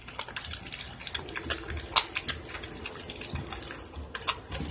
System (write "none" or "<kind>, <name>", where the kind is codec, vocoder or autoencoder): none